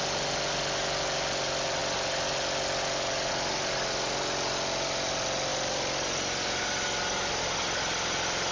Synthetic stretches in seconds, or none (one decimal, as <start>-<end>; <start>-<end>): none